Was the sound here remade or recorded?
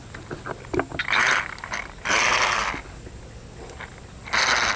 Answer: recorded